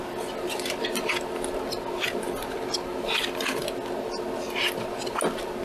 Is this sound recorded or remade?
recorded